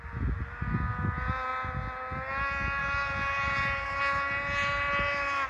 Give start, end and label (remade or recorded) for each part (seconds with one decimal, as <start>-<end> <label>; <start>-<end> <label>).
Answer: 0.0-2.8 recorded; 2.8-4.0 remade; 4.0-5.5 recorded